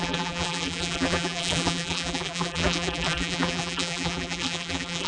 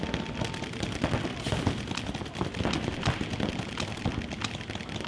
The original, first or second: second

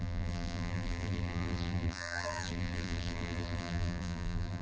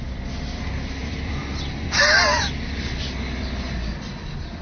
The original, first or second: second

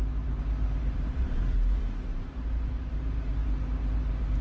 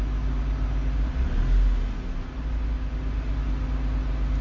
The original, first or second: second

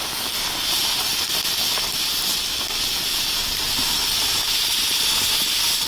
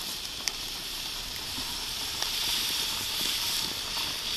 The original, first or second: first